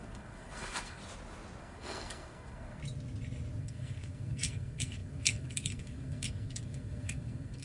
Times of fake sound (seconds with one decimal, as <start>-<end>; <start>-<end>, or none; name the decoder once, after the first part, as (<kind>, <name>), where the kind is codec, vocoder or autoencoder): 0.0-1.0 (codec, SNAC); 1.6-2.8; 3.6-7.6

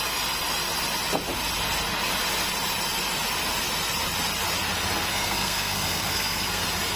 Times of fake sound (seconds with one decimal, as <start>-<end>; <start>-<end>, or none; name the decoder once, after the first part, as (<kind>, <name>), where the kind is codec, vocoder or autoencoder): 5.1-6.6 (codec, SNAC)

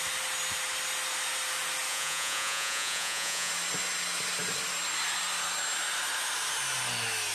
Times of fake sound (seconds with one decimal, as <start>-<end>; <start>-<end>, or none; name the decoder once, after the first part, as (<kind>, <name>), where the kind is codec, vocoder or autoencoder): 1.9-3.5 (vocoder, Vocos)

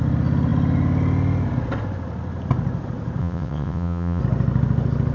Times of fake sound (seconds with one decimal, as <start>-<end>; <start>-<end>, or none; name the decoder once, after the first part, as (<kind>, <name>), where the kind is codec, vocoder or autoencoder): 3.2-4.2 (vocoder, WaveNeXt)

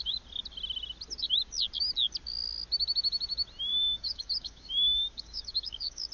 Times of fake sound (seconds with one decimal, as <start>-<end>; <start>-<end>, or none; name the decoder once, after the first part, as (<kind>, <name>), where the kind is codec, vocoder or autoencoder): 3.7-6.1 (codec, DAC)